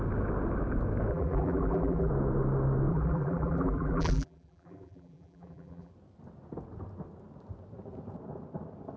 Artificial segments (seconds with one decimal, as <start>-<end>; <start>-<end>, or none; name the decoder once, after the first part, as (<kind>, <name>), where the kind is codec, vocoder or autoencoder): 1.1-2.1 (vocoder, BigVGAN v2); 2.9-5.9